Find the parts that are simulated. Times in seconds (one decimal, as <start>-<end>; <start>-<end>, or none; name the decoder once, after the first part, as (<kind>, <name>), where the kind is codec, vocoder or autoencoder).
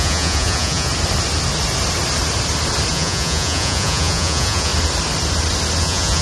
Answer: 0.0-0.9 (vocoder, Vocos); 2.9-4.7; 5.8-6.2